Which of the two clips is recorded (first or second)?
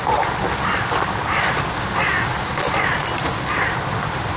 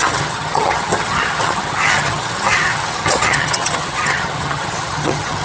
first